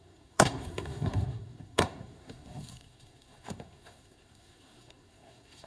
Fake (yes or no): yes